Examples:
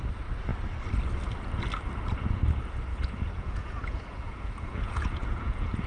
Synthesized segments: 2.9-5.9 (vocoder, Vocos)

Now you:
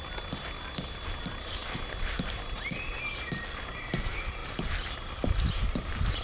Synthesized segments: none